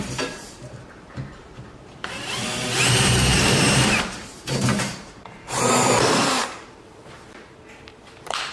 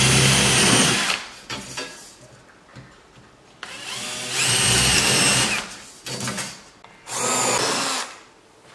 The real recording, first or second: second